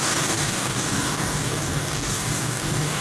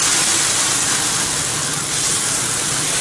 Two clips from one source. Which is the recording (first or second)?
second